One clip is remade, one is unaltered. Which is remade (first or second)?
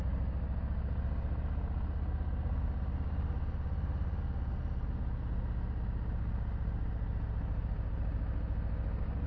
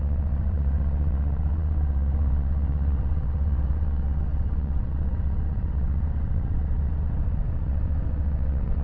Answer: second